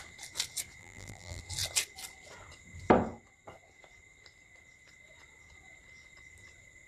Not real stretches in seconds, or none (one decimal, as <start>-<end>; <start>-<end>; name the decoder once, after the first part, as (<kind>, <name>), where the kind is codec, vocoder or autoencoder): 0.8-1.4 (vocoder, BigVGAN v2)